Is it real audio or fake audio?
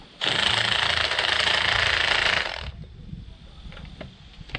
real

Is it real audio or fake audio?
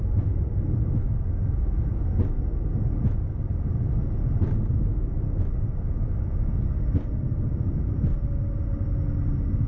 real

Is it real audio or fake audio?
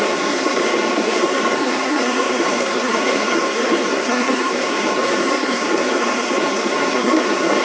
fake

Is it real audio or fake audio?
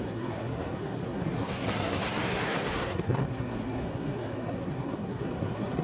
fake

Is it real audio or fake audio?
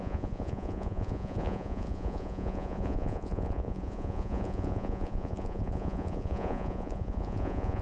fake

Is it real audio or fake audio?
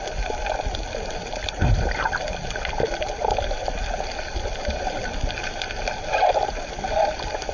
real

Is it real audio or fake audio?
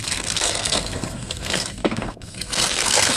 fake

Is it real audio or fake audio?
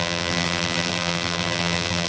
fake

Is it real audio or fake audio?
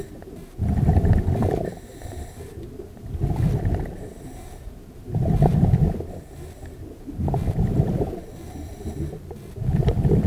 fake